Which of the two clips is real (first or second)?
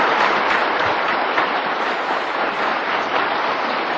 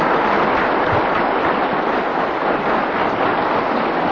second